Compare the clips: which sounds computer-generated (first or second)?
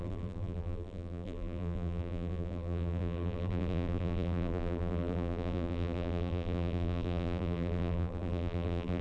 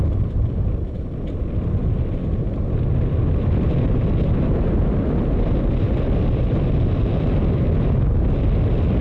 first